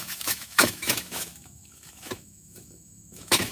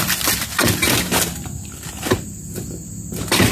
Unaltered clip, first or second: second